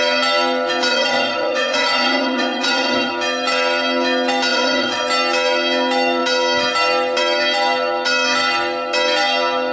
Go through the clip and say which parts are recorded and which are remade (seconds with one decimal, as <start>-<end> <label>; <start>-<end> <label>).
0.0-0.9 recorded; 0.9-3.1 remade; 3.1-4.5 recorded; 4.5-5.0 remade; 5.0-9.7 recorded